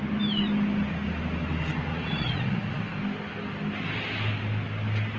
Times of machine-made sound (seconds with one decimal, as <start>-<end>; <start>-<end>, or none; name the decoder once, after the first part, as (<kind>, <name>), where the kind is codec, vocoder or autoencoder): 1.9-2.8 (vocoder, Vocos)